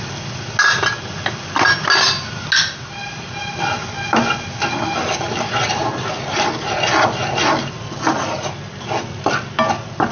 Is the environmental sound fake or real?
real